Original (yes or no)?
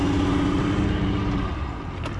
yes